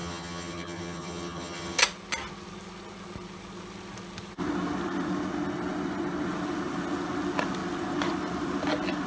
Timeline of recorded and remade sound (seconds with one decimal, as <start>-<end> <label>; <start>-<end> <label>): 0.0-1.8 remade; 1.8-9.1 recorded